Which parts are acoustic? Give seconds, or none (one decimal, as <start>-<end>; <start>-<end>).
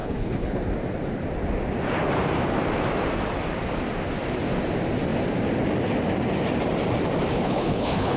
0.6-7.3